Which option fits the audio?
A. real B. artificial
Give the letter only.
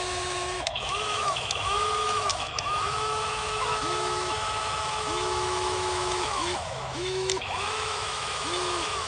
B